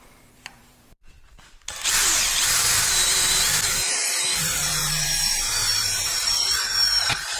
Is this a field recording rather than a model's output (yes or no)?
no